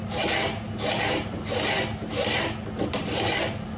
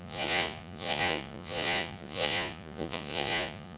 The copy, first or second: second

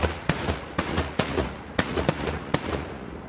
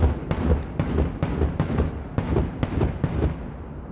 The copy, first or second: first